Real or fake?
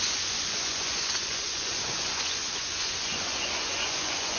fake